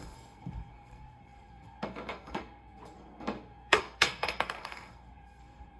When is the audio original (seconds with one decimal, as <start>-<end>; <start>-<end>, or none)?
none